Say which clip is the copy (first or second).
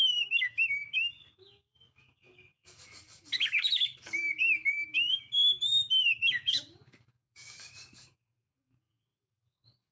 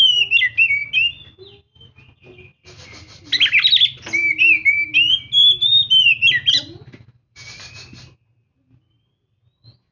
first